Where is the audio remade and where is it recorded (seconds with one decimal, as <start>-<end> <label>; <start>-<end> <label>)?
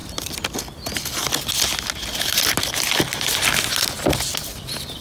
0.0-5.0 recorded